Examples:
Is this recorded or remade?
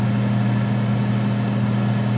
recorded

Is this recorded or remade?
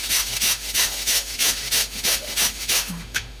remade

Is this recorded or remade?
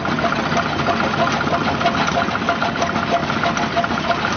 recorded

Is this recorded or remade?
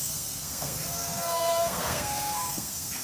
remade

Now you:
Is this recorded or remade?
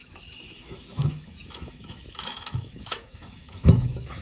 remade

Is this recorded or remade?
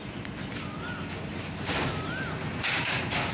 recorded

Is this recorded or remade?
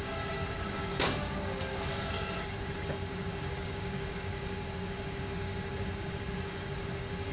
remade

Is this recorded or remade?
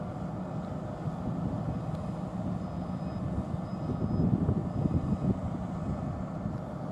recorded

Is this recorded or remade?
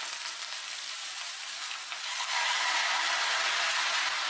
recorded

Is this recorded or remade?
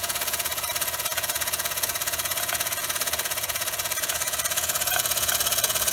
remade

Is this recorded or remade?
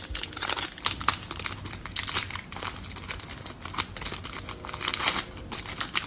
recorded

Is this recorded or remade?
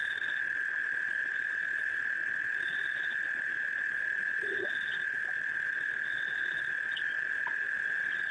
remade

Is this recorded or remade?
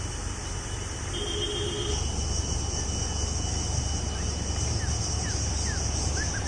recorded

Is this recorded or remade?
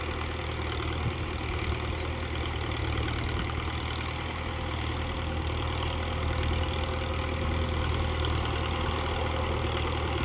recorded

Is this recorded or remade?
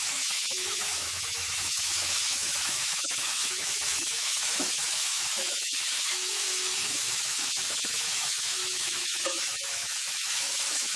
remade